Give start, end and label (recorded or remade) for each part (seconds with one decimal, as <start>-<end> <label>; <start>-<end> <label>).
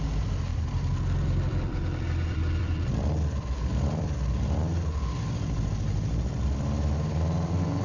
0.0-0.5 recorded; 0.5-4.4 remade; 4.4-7.8 recorded